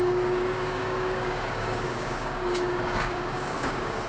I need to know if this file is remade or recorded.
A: remade